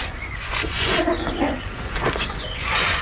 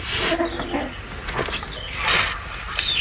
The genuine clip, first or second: second